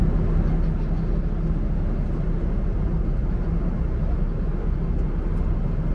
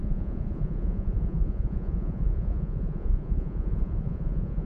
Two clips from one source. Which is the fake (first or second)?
second